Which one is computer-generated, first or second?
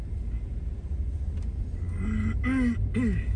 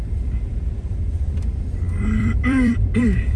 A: second